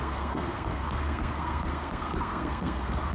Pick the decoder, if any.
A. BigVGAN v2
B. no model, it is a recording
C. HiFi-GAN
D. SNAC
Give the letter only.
D